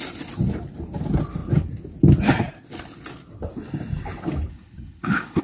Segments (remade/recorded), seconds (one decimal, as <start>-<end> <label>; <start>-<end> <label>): 0.0-4.5 recorded; 4.5-5.4 remade